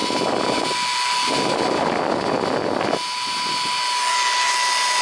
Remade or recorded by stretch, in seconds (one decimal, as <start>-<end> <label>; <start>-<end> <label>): 0.0-5.0 recorded